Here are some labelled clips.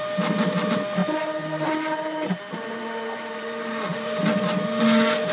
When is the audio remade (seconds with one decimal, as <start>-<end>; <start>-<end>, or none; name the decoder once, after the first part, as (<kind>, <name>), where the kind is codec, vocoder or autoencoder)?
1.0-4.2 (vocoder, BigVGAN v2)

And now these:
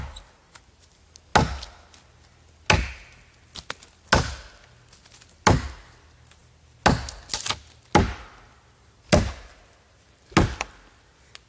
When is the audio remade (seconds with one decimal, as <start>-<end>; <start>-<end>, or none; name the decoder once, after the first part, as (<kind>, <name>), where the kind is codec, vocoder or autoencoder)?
none

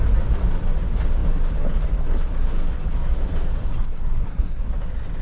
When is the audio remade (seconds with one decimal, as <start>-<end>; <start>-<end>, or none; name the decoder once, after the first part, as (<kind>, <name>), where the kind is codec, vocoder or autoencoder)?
3.7-4.6 (codec, SNAC)